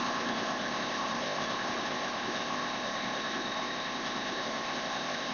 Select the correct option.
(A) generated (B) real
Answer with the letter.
A